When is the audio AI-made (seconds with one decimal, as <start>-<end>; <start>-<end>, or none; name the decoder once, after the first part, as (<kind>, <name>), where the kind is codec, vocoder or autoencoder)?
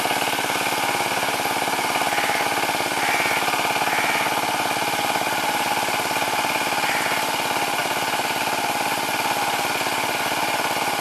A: 7.8-9.7 (vocoder, BigVGAN v2)